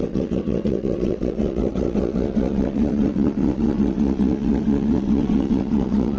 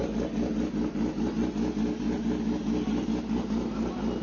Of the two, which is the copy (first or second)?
first